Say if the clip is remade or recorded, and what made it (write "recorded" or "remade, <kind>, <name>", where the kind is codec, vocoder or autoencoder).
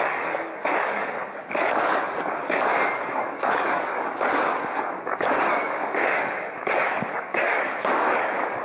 remade, codec, DAC